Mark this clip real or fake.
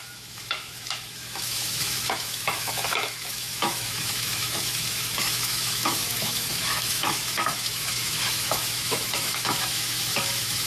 fake